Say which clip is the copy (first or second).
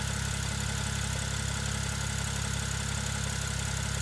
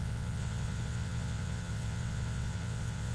second